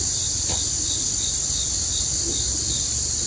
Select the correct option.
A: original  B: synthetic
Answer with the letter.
A